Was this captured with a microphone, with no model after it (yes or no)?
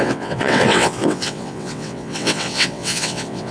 no